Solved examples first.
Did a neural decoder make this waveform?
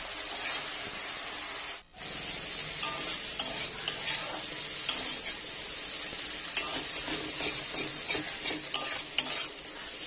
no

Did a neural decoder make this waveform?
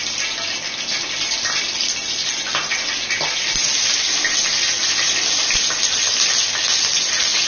no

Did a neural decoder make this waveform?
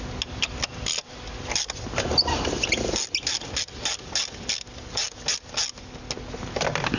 no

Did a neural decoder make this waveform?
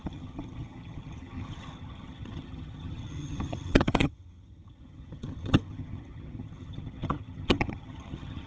yes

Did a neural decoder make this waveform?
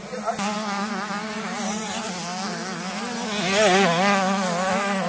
no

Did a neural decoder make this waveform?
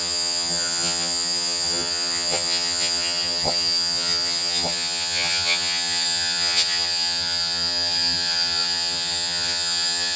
yes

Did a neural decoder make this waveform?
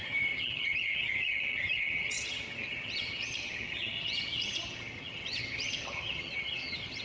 yes